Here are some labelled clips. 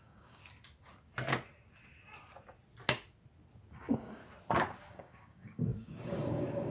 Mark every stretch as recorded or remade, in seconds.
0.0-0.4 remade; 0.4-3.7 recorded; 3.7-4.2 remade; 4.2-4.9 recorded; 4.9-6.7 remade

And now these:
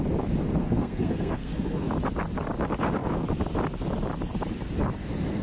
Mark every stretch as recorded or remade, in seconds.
0.0-0.6 recorded; 0.6-1.9 remade; 1.9-5.4 recorded

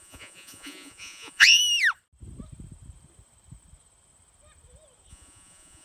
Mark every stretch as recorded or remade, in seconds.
0.0-1.6 remade; 1.6-5.1 recorded; 5.1-5.8 remade